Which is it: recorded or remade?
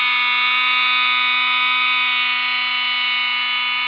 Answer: recorded